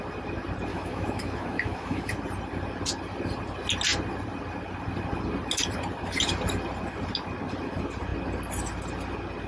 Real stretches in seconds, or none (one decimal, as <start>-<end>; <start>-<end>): 0.0-0.7; 2.1-9.5